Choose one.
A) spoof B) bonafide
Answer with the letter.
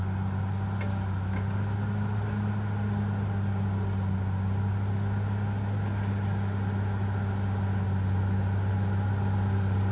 B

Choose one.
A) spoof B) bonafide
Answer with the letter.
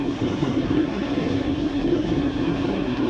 A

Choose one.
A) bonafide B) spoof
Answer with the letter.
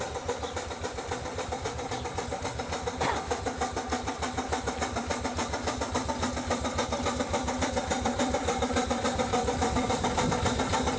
B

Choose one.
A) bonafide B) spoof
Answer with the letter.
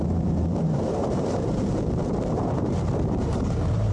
B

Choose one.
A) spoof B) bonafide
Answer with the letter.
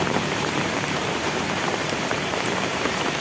A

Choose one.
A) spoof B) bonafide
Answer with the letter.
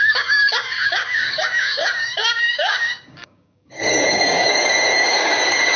A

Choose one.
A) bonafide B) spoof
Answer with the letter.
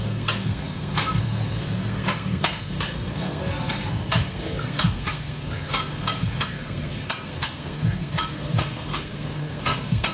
B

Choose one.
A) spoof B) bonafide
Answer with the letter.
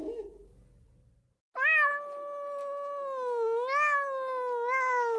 B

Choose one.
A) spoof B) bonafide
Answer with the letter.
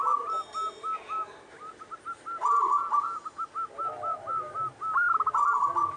B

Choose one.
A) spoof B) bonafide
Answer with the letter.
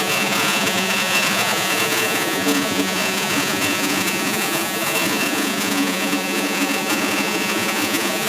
A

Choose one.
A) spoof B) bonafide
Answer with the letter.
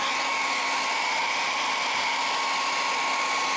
B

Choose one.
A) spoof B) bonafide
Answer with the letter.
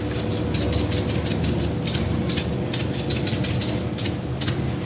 B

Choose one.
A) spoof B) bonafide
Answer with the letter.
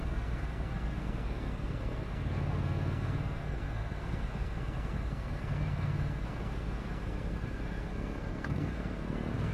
A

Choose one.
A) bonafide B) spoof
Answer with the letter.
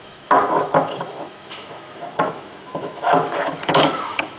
B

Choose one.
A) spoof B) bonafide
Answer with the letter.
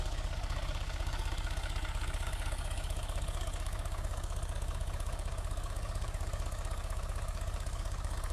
A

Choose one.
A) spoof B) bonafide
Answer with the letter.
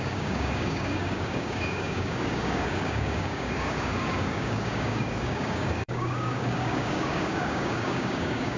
A